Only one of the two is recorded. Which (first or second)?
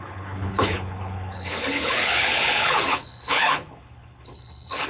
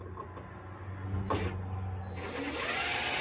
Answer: second